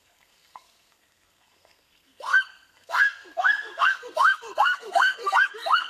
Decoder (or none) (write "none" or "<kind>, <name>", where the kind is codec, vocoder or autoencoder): codec, SNAC